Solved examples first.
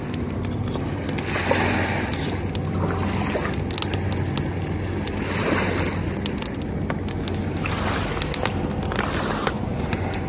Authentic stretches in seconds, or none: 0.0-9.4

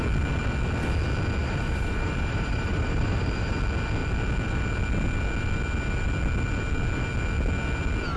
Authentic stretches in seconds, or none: 0.0-1.4; 3.5-8.2

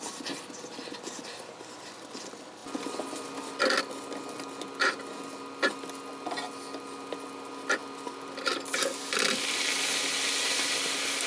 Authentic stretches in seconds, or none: 0.0-11.3